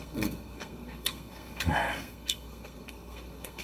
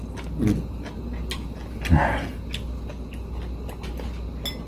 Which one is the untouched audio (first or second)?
second